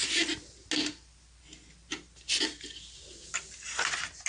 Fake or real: real